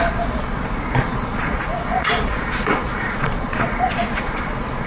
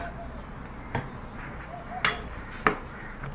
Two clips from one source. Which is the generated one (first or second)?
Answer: first